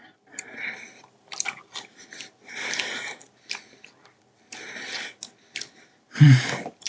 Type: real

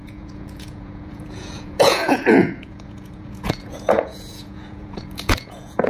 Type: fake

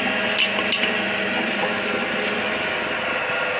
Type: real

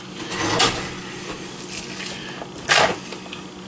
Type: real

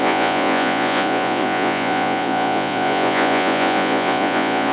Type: fake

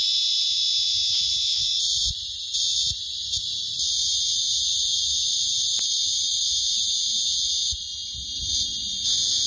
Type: fake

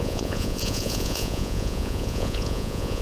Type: fake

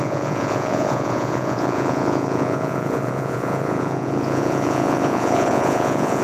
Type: fake